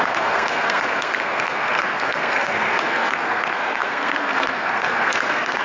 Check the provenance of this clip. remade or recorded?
remade